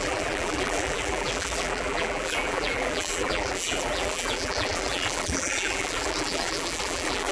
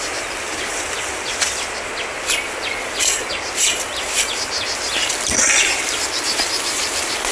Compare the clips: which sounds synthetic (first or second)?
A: first